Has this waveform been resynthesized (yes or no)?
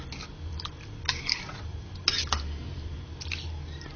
no